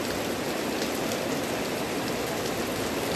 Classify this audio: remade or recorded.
recorded